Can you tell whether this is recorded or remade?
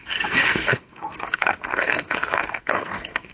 remade